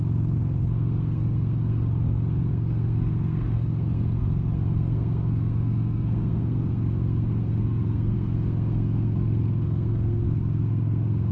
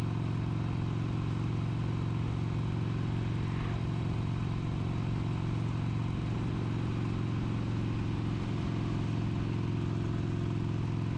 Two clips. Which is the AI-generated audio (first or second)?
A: first